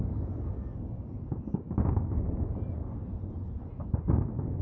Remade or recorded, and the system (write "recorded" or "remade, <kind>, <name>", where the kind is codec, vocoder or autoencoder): recorded